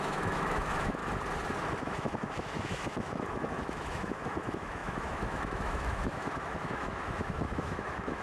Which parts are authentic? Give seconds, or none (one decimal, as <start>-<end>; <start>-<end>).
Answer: 1.0-1.8